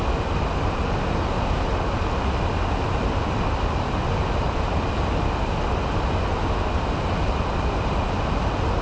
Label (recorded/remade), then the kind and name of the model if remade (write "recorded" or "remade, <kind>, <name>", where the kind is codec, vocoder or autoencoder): recorded